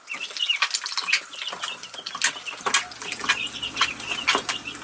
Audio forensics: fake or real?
real